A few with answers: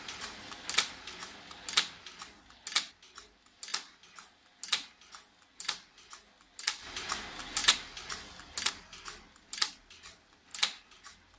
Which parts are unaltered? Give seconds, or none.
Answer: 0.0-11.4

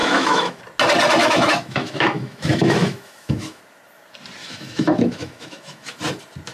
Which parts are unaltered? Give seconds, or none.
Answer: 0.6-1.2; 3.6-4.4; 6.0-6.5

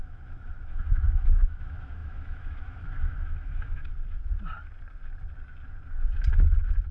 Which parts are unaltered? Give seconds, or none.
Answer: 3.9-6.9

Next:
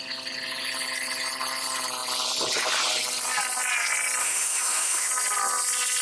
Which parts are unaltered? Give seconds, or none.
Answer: 0.0-4.2; 5.1-6.0